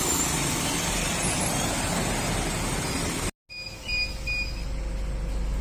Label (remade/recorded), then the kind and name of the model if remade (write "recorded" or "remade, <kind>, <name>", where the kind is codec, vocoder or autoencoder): recorded